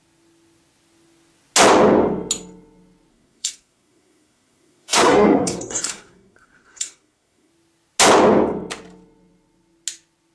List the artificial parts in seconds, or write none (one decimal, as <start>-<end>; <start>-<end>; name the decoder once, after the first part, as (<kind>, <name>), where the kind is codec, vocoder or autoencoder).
3.1-7.5 (codec, SNAC)